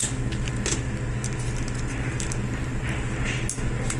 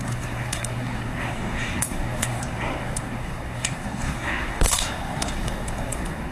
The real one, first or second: first